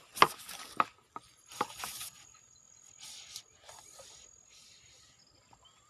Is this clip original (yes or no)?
yes